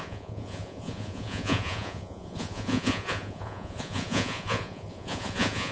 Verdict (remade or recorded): remade